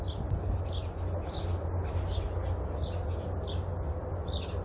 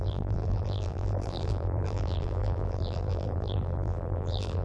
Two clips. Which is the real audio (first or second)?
first